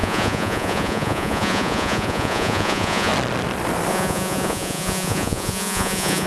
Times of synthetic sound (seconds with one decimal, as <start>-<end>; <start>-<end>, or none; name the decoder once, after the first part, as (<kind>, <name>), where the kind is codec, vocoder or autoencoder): 0.0-3.1 (vocoder, Vocos); 3.9-6.3